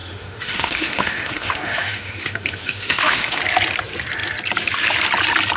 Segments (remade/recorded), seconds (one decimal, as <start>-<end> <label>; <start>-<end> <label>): 0.0-3.4 remade; 3.4-5.6 recorded